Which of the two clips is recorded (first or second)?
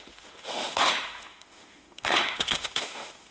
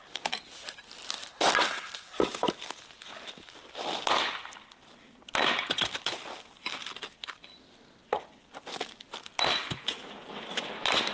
second